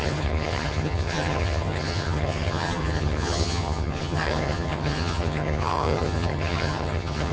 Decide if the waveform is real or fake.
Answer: fake